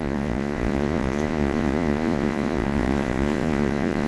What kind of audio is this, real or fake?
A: fake